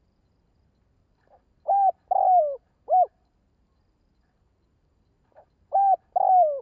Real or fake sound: real